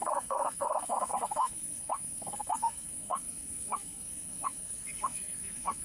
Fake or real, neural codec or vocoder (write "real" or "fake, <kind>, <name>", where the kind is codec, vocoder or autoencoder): fake, codec, SNAC